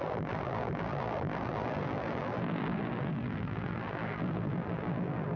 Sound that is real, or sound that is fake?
fake